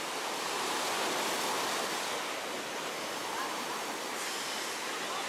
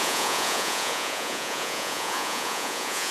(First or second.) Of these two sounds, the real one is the first